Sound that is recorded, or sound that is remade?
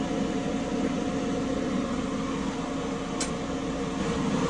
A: recorded